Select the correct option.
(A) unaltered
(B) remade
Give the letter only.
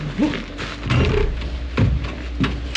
A